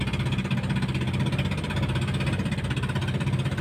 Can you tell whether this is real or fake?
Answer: real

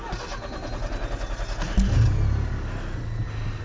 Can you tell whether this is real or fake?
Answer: real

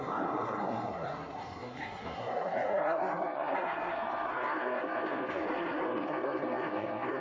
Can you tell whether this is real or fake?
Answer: fake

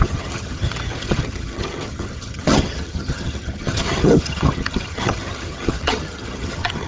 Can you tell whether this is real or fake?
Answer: fake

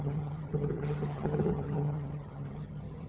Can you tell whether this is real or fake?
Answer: fake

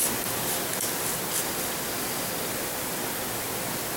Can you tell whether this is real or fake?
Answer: real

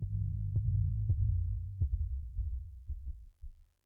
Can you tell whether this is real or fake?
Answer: fake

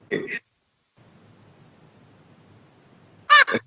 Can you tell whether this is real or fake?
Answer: real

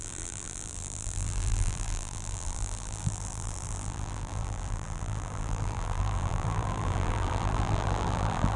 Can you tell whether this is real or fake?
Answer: fake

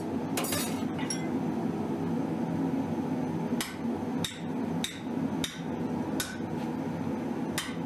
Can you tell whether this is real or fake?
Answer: real